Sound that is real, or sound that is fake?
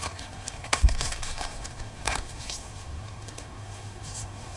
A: fake